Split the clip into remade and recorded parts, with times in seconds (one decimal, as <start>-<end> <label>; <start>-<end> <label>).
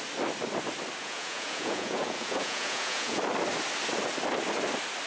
0.0-1.0 recorded; 1.0-3.2 remade; 3.2-5.1 recorded